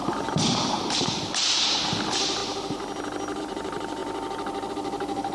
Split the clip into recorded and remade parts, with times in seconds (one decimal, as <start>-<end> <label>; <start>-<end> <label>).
0.0-2.4 remade; 2.4-3.4 recorded; 3.4-4.0 remade; 4.0-4.7 recorded; 4.7-5.3 remade